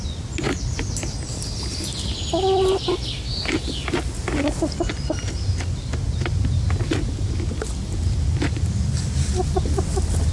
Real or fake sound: real